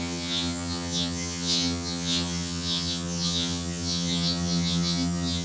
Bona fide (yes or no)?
no